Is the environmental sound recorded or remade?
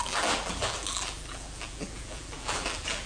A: remade